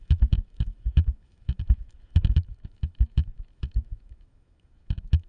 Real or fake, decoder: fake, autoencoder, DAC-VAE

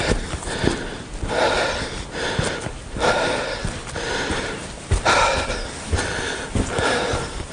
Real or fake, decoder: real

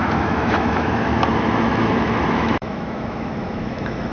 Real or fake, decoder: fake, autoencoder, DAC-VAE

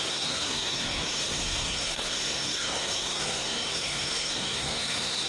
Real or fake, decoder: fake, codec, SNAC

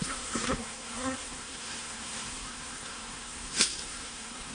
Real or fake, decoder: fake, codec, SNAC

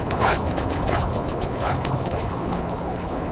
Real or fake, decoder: fake, codec, HILCodec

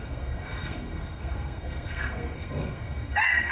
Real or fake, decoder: fake, codec, SNAC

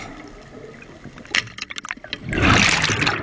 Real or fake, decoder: real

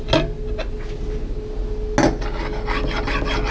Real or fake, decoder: real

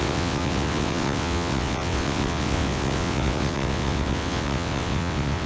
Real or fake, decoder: fake, vocoder, WaveNeXt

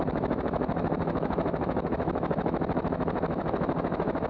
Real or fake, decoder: fake, autoencoder, DAC-VAE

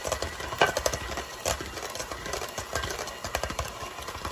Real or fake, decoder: real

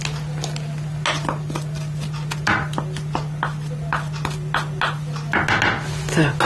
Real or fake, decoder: real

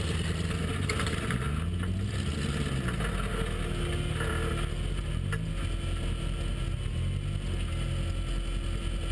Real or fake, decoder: real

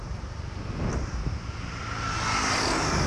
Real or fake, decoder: real